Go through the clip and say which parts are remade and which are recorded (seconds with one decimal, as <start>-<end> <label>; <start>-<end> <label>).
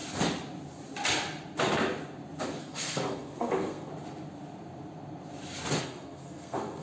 0.0-2.6 recorded; 2.6-3.9 remade; 3.9-5.8 recorded; 5.8-6.8 remade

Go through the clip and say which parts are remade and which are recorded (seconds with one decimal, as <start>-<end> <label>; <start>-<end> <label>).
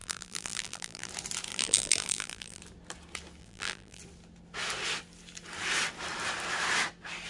0.0-1.1 remade; 1.1-1.5 recorded; 1.5-2.6 remade; 2.6-3.4 recorded; 3.4-4.0 remade; 4.0-7.3 recorded